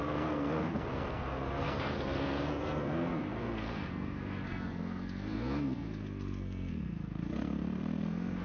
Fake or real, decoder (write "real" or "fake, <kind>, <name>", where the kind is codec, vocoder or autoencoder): fake, codec, SNAC